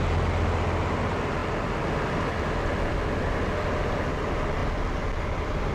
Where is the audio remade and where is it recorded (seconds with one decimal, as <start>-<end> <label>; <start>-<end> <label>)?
0.0-5.7 recorded